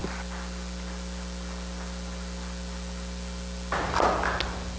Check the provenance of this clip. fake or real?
real